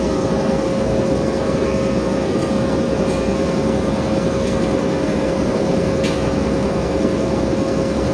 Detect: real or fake fake